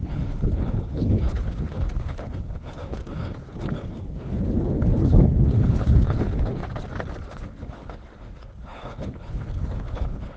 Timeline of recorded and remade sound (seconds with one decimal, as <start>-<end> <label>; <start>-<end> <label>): 0.0-6.6 remade; 6.6-7.3 recorded; 7.3-10.4 remade